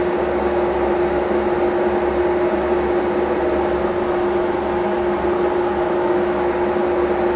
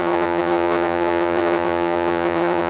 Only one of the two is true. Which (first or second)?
first